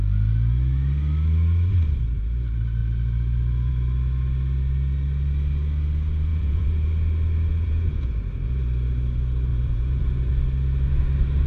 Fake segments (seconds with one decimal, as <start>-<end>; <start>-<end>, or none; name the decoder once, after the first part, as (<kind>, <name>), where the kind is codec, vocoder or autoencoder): 6.3-6.9 (vocoder, Vocos); 7.5-8.1; 9.5-10.3